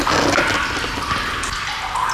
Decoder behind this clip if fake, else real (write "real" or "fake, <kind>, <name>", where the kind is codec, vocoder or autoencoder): real